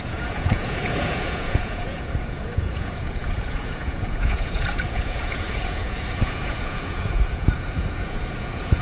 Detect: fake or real fake